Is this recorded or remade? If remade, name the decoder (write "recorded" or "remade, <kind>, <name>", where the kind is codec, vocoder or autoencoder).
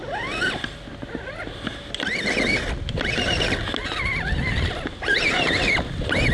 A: recorded